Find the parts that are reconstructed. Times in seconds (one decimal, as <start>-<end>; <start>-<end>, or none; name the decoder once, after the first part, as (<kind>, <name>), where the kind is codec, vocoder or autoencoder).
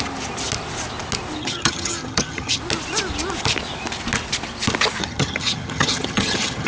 1.4-2.6 (vocoder, HiFi-GAN); 5.0-6.7